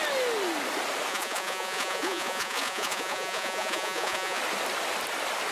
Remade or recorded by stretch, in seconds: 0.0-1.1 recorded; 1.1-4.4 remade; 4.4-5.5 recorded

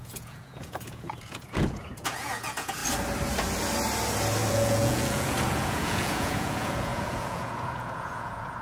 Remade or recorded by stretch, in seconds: 0.0-2.8 remade; 2.8-4.5 recorded; 4.5-8.6 remade

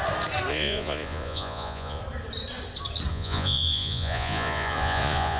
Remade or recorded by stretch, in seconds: 0.0-0.5 recorded; 0.5-2.0 remade; 2.0-3.1 recorded; 3.1-5.4 remade

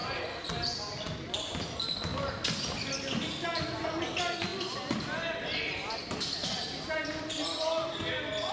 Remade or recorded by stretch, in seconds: 0.0-8.5 recorded